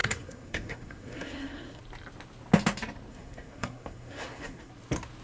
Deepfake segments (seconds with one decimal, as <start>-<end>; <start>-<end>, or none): 0.0-1.8; 3.1-4.7